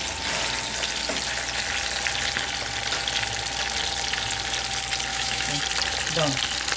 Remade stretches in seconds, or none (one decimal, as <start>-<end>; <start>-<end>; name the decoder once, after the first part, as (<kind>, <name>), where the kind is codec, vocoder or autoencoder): 5.1-5.6 (autoencoder, DAC-VAE)